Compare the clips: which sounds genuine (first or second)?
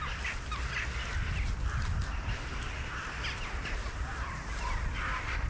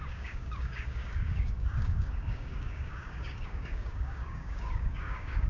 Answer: first